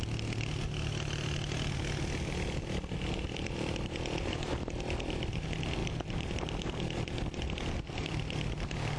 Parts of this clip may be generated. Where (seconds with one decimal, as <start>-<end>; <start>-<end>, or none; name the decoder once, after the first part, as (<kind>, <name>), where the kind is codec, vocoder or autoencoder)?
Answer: none